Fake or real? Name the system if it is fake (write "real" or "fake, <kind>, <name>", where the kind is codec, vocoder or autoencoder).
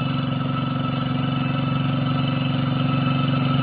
real